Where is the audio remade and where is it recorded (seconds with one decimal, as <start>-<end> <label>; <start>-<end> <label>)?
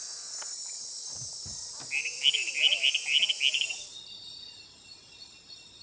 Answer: 0.0-5.8 recorded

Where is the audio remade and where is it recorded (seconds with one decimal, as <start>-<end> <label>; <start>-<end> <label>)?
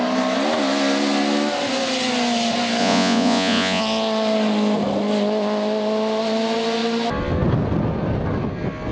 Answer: 0.0-2.8 recorded; 2.8-3.8 remade; 3.8-8.9 recorded